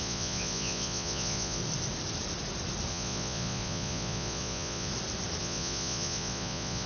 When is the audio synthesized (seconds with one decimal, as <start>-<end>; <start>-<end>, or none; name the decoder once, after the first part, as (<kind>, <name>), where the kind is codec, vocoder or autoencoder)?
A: 0.0-1.6 (vocoder, Vocos); 2.9-4.9; 5.4-6.9